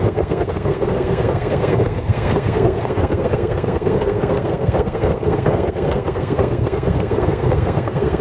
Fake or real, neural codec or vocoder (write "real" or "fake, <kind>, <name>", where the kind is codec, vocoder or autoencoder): fake, codec, SNAC